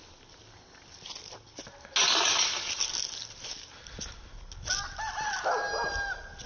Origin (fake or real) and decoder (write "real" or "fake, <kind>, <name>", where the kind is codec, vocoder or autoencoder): real